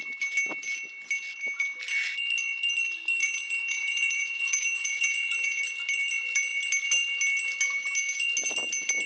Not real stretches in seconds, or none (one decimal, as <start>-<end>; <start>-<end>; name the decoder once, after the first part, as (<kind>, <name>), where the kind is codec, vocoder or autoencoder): 3.2-5.6 (vocoder, Vocos)